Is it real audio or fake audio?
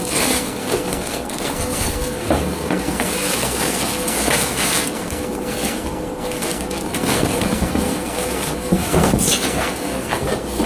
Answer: fake